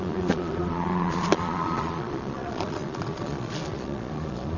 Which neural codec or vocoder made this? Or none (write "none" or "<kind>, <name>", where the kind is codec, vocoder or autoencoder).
vocoder, Vocos